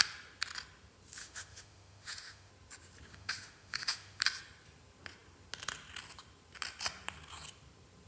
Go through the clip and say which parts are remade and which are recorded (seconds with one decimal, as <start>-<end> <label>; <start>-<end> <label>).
0.0-1.2 recorded; 1.2-2.5 remade; 2.5-3.1 recorded; 3.1-4.2 remade; 4.2-8.1 recorded